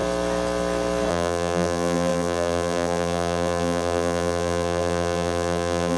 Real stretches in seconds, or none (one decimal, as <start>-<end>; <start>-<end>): 0.0-1.1